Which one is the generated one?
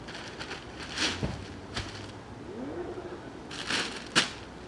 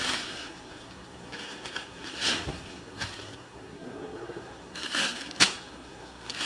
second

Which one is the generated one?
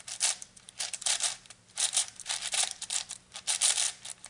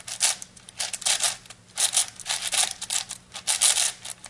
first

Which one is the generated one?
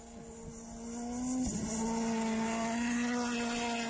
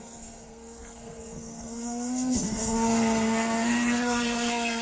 second